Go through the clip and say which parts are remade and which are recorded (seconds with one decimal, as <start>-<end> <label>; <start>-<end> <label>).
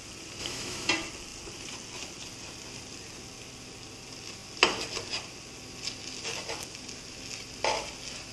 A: 0.0-0.4 recorded; 0.4-0.9 remade; 0.9-8.3 recorded